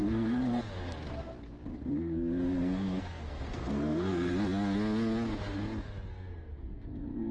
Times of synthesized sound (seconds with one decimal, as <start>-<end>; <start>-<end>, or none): 0.0-0.6; 1.7-4.3; 6.1-7.3